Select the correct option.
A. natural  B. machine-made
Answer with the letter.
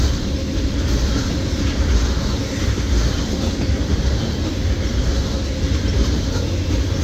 A